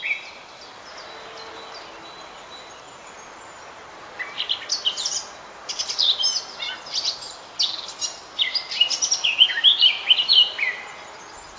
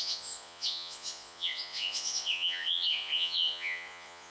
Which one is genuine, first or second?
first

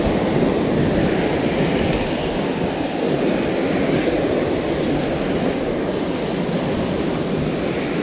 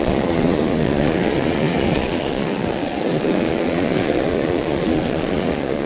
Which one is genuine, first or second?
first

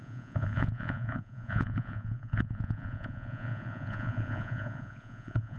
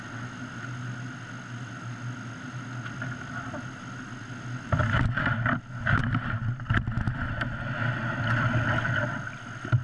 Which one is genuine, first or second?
second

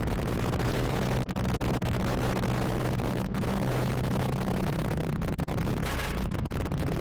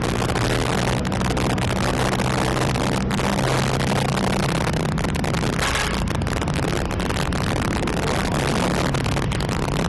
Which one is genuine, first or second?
second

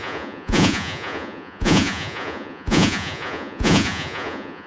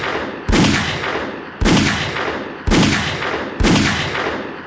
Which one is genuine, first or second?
second